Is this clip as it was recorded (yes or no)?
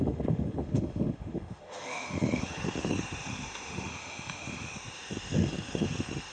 no